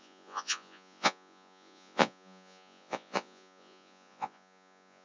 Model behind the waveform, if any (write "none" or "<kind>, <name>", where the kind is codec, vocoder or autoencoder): vocoder, Vocos